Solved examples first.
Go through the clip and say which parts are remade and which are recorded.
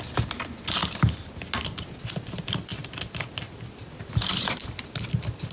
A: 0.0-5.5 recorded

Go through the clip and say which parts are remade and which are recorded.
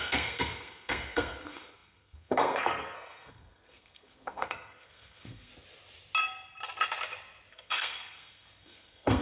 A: 0.0-5.5 remade; 5.5-7.5 recorded; 7.5-9.2 remade